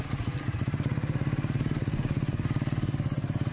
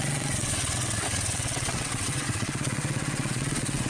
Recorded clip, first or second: first